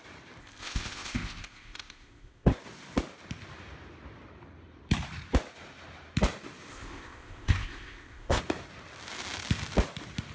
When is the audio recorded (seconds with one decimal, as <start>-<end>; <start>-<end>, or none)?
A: 0.0-0.4; 2.6-6.7; 8.4-10.3